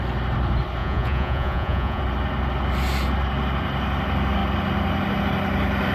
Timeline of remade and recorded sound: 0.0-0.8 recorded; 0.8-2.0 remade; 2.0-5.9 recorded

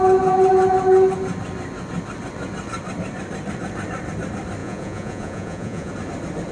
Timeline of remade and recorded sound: 0.0-4.6 recorded; 4.6-5.9 remade; 5.9-6.5 recorded

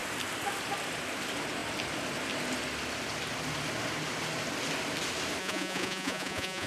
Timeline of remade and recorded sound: 0.0-5.4 recorded; 5.4-6.7 remade